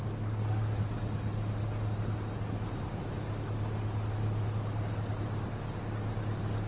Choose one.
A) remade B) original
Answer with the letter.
B